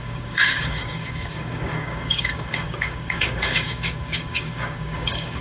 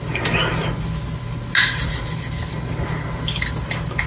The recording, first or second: second